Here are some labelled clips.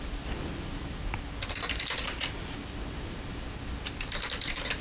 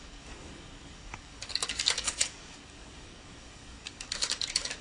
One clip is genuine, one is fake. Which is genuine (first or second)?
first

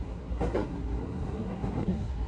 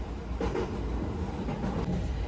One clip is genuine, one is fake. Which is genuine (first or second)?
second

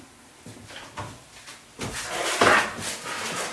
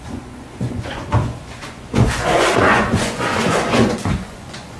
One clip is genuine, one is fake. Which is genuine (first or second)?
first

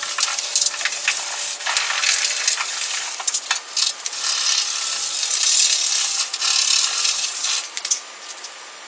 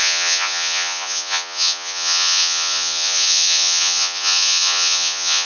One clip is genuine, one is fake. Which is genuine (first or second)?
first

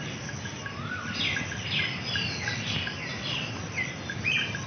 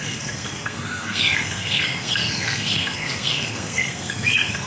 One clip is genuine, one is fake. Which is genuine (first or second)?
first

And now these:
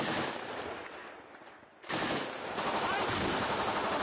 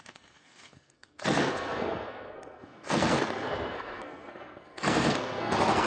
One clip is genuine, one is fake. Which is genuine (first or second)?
first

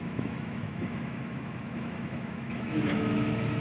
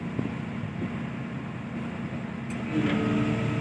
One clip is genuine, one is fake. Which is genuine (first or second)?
second